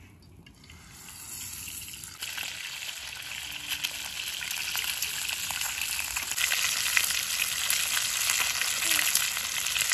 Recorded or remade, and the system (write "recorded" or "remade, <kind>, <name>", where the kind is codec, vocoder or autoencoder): recorded